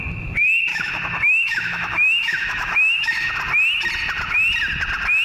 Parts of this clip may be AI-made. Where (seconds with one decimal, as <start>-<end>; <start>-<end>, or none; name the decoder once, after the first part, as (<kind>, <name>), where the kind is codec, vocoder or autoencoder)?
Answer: 0.7-3.3 (autoencoder, DAC-VAE)